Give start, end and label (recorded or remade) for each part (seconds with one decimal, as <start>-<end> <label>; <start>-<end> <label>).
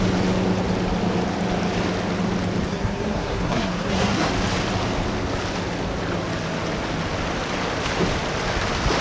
0.0-2.7 recorded; 2.7-4.3 remade; 4.3-9.0 recorded